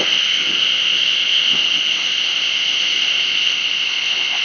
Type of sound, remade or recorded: remade